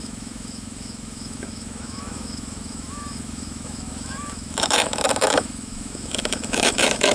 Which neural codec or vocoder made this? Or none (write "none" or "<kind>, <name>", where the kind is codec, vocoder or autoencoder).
autoencoder, DAC-VAE